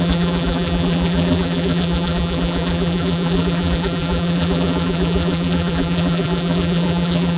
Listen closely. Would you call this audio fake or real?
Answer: fake